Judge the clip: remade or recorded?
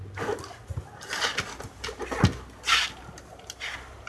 recorded